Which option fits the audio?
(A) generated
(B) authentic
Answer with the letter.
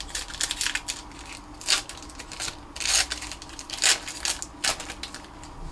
B